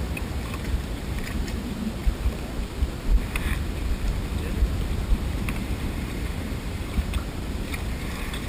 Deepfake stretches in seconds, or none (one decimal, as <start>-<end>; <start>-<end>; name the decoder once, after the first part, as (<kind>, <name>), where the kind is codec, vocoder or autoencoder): 0.0-2.0 (vocoder, BigVGAN v2); 4.5-8.5